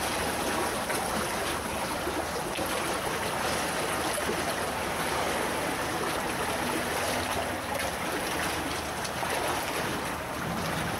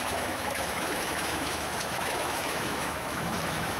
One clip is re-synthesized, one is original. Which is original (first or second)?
first